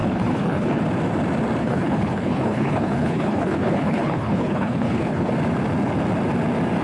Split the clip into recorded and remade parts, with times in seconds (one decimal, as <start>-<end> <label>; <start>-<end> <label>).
0.0-0.8 remade; 0.8-1.6 recorded; 1.6-5.3 remade; 5.3-6.8 recorded